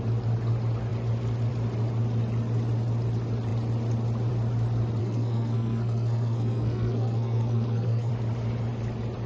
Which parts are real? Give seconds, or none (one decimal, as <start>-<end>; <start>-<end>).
0.0-5.0; 8.1-9.3